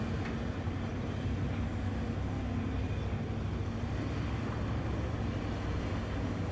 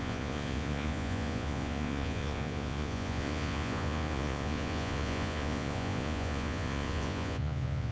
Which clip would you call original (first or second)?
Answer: first